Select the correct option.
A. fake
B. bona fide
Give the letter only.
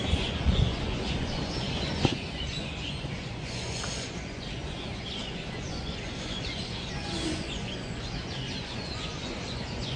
A